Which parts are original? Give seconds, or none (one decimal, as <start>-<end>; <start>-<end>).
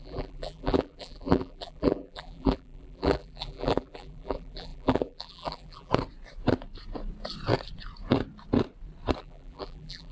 5.9-9.2